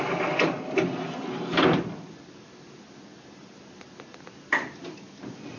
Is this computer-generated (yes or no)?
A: no